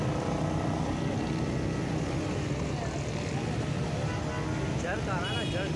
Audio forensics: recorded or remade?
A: recorded